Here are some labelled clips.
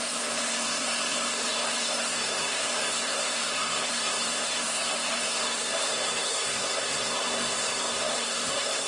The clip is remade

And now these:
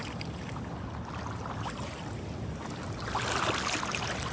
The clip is recorded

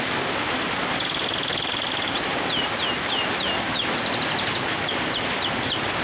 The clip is recorded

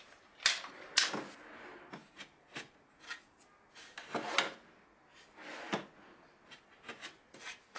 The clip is recorded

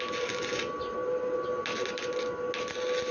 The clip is recorded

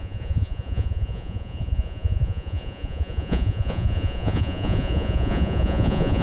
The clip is remade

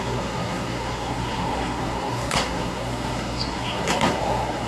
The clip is remade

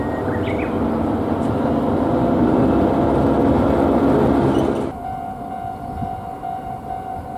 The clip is recorded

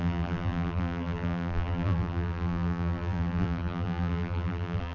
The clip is remade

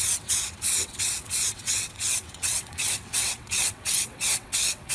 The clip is remade